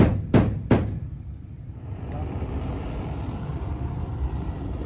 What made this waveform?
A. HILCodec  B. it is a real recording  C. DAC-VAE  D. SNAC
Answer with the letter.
B